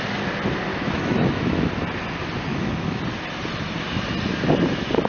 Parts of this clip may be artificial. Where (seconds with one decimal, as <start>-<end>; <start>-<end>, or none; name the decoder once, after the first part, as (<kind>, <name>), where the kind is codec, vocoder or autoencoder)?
0.7-1.7 (autoencoder, DAC-VAE); 2.5-3.0